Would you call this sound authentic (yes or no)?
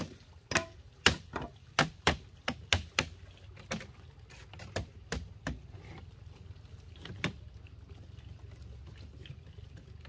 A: yes